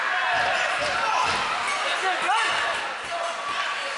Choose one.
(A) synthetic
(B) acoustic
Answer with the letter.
B